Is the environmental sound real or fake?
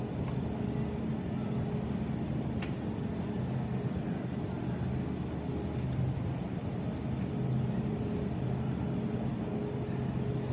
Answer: real